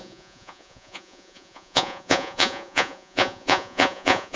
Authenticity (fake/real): fake